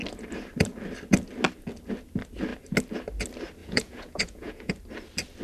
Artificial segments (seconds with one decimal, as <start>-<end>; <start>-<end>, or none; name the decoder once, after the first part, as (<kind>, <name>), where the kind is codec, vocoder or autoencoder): 3.6-4.7 (vocoder, Vocos)